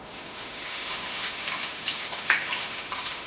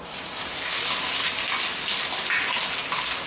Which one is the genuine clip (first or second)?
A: second